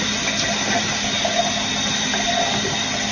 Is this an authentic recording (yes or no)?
yes